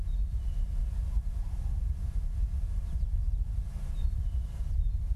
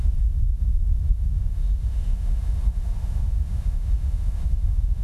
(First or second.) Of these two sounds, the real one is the first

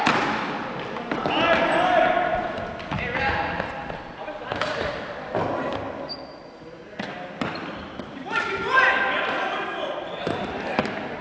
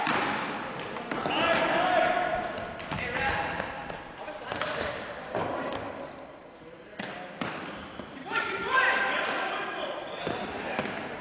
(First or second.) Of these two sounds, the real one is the first